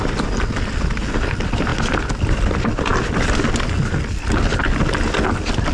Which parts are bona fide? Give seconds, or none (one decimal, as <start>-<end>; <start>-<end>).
0.0-5.7

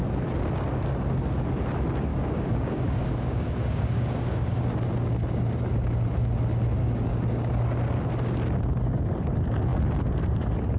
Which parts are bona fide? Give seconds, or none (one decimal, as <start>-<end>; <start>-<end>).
0.0-2.1; 4.6-6.8; 7.6-10.8

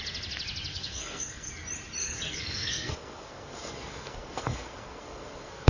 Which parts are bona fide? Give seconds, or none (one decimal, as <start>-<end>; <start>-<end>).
0.0-0.7; 1.5-2.0